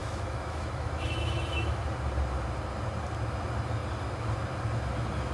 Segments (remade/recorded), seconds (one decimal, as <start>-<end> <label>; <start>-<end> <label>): 0.0-1.8 remade; 1.8-5.3 recorded